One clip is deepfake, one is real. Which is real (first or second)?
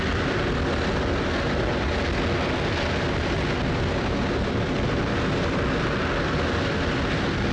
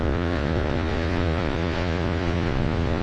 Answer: first